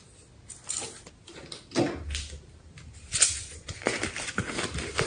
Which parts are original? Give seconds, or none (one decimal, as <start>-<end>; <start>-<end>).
0.0-3.4; 4.0-5.1